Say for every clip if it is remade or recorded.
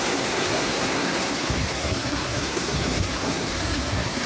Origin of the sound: remade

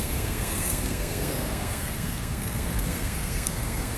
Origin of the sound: remade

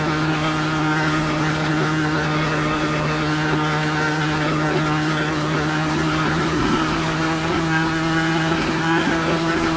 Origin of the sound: remade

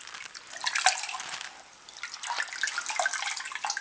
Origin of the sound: recorded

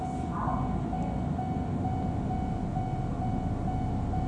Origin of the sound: recorded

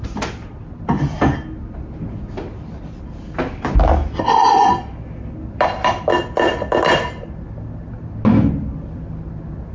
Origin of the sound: recorded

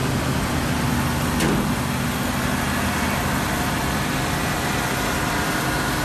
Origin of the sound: recorded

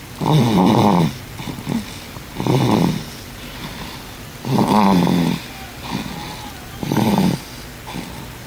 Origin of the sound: recorded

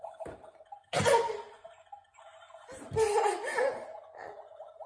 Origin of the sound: recorded